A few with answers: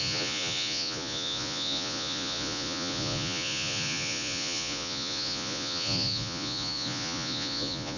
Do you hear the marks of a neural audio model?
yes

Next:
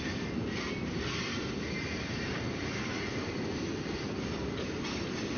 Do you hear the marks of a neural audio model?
no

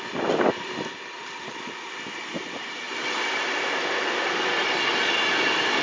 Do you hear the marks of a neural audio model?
no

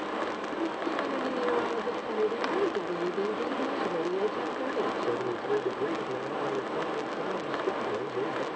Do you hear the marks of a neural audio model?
no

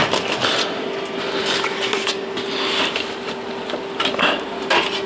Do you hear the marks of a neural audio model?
no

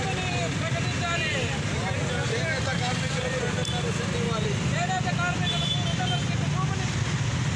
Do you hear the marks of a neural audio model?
no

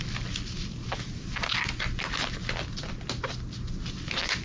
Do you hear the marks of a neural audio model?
no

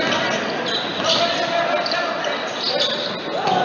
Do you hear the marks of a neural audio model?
no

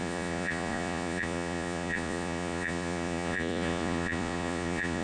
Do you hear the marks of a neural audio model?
yes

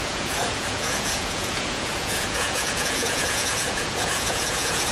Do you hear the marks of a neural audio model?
yes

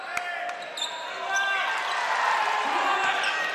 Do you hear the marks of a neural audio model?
no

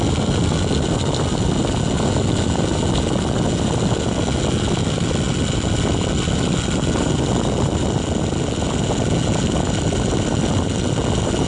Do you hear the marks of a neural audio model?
no